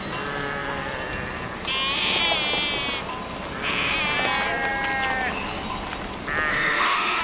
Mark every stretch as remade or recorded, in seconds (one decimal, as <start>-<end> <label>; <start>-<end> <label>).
0.0-6.5 recorded; 6.5-7.2 remade